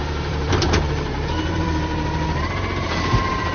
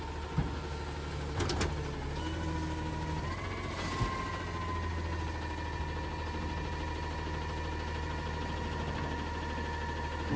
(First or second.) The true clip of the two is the second